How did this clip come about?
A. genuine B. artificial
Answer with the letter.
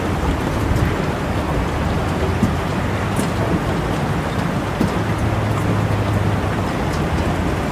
A